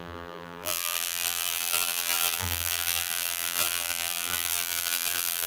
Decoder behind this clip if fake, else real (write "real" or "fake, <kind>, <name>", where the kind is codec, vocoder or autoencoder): fake, vocoder, BigVGAN v2